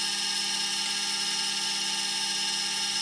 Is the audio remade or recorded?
recorded